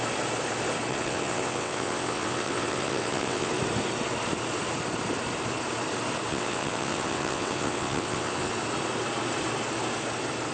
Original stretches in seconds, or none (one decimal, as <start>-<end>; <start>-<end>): 0.0-0.9; 3.5-6.3; 8.5-10.5